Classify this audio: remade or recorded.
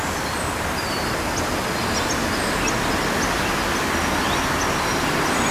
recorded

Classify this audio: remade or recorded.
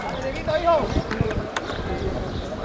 recorded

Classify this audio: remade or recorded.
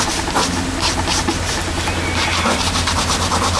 recorded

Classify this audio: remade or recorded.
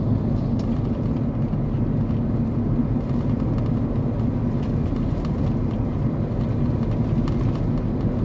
recorded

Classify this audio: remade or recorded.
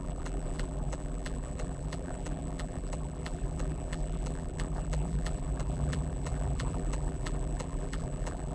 remade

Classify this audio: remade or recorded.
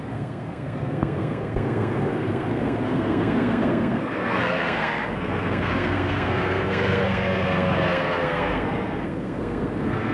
remade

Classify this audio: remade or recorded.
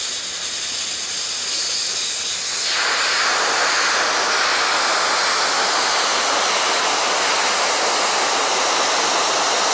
recorded